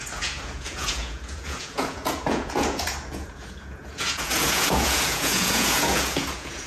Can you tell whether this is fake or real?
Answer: fake